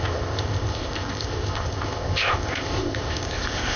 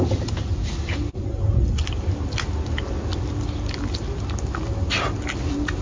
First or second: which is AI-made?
first